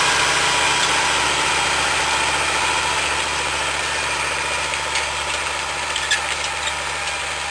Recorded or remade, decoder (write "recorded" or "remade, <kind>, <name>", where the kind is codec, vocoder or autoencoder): recorded